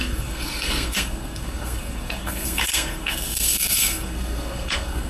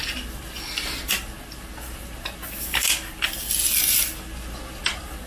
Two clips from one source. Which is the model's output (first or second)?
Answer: first